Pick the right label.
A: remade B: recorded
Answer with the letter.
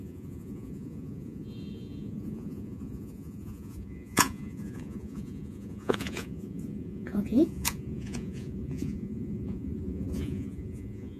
A